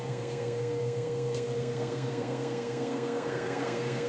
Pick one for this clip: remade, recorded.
remade